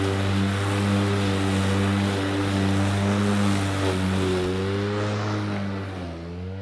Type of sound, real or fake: real